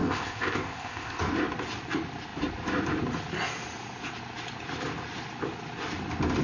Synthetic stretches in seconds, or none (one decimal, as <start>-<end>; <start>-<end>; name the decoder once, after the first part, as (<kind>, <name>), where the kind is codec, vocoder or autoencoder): 0.0-1.2 (codec, ZipCodec)